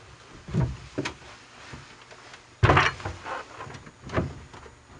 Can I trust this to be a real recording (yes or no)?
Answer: yes